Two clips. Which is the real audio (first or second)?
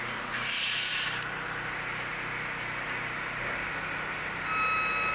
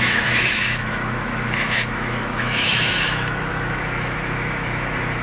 first